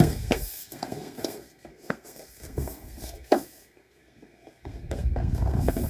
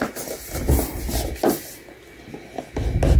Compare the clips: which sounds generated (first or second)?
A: first